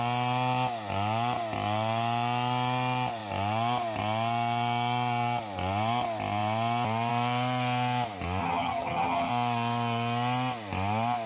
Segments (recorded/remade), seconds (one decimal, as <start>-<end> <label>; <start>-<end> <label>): 0.0-8.4 recorded; 8.4-9.3 remade; 9.3-11.3 recorded